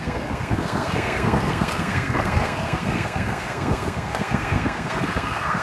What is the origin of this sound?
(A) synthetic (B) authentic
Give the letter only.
A